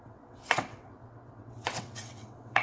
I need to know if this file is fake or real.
fake